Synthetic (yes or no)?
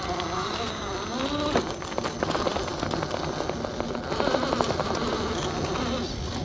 no